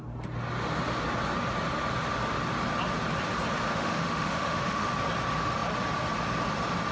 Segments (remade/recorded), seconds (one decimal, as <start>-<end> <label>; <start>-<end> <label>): 0.0-3.7 recorded; 3.7-4.9 remade; 4.9-6.9 recorded